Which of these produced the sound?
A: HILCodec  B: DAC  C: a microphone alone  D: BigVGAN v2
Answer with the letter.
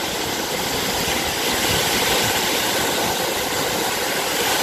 C